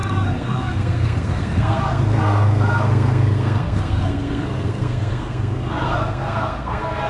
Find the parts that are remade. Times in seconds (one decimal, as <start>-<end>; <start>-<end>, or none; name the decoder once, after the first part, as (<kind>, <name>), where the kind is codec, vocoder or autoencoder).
0.0-7.1 (codec, SNAC)